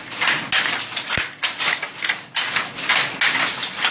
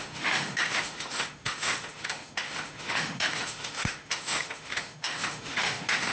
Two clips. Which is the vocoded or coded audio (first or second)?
second